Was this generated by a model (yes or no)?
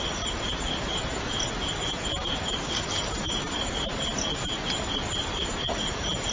no